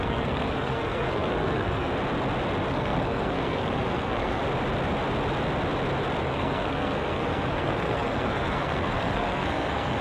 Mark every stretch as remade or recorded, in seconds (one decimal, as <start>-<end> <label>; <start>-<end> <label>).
0.0-1.9 remade; 1.9-2.7 recorded; 2.7-4.4 remade; 4.4-6.2 recorded; 6.2-10.0 remade